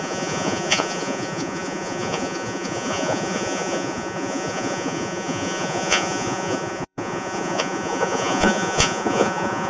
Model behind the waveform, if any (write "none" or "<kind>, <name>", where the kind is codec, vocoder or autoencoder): vocoder, Vocos